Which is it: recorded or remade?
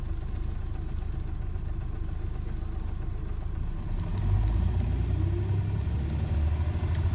recorded